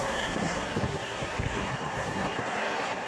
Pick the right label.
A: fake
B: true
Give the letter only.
A